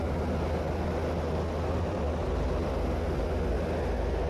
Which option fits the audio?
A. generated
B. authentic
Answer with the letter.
B